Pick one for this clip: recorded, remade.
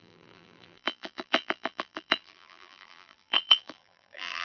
remade